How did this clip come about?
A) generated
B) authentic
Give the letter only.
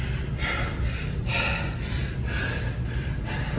B